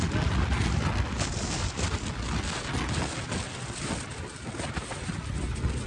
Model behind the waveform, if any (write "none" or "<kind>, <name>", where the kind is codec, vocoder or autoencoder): none